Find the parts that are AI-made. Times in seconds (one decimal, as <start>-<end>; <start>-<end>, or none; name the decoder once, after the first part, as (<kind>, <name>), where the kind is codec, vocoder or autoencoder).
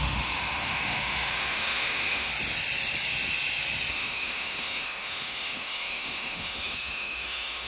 0.0-2.3 (autoencoder, DAC-VAE); 3.9-7.7